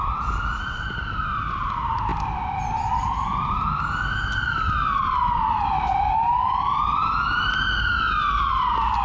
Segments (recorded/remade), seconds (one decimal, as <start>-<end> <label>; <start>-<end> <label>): 0.0-9.0 recorded

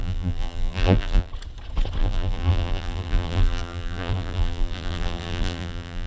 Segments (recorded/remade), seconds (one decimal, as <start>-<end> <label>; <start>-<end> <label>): 0.0-1.3 remade; 1.3-2.0 recorded; 2.0-6.1 remade

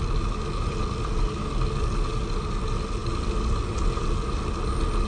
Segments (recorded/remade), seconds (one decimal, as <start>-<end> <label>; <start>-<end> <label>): 0.0-5.1 recorded

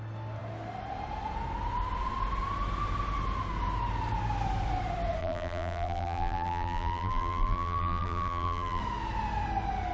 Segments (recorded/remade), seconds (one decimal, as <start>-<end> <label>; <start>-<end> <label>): 0.0-5.2 recorded; 5.2-8.8 remade; 8.8-9.9 recorded

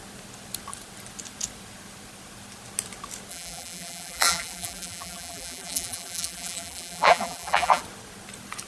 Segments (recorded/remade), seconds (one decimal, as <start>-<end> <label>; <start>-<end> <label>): 0.0-3.3 recorded; 3.3-7.8 remade; 7.8-8.7 recorded

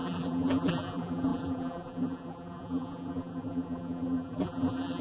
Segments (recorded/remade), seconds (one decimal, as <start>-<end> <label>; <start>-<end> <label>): 0.0-5.0 remade